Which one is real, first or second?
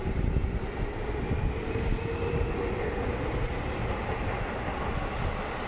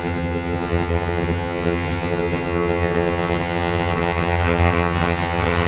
first